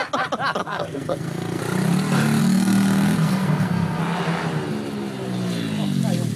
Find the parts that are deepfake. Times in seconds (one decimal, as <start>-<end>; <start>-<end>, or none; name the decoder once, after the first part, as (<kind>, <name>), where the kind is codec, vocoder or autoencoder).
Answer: 0.6-1.6 (codec, SNAC); 2.4-4.0

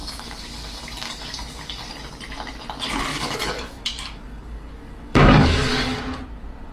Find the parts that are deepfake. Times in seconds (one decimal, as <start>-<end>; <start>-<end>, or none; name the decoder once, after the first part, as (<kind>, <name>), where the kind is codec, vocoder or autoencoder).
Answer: 0.0-1.9 (codec, DAC); 3.1-6.0

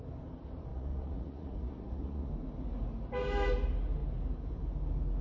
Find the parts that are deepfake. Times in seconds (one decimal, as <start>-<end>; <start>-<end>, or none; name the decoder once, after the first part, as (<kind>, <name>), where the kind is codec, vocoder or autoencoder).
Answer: 0.7-2.3 (vocoder, Vocos)

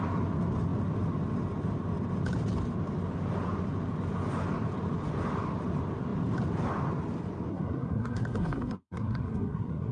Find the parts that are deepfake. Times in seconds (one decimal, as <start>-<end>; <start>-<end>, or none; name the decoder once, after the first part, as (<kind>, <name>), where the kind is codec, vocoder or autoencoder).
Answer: 7.5-9.9 (codec, SNAC)